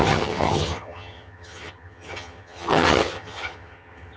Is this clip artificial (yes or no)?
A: yes